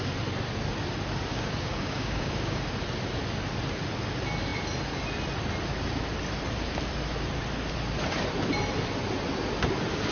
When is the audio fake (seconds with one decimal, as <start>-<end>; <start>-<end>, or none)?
1.3-2.6